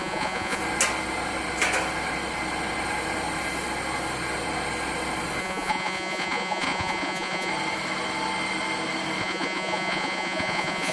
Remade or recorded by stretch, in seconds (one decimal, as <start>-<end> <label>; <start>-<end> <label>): 0.0-0.6 remade; 0.6-5.4 recorded; 5.4-7.5 remade; 7.5-9.2 recorded; 9.2-10.9 remade

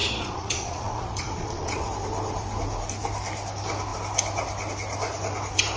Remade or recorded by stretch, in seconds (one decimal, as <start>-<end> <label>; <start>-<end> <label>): 0.0-1.9 remade; 1.9-5.8 recorded